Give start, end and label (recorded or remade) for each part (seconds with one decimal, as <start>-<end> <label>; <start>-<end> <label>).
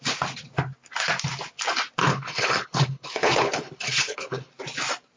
0.0-2.0 recorded; 2.0-4.5 remade; 4.5-5.2 recorded